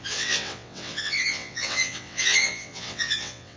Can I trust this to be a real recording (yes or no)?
no